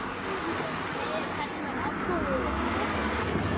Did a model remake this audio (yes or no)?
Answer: no